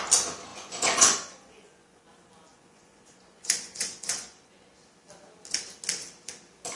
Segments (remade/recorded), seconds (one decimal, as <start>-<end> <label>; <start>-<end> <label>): 0.0-0.5 recorded; 0.5-2.1 remade; 2.1-2.5 recorded; 2.5-4.7 remade; 4.7-6.8 recorded